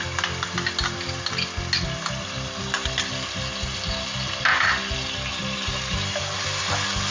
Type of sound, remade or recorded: recorded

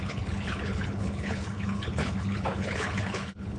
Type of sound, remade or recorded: remade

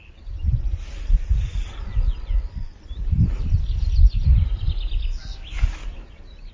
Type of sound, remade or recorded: recorded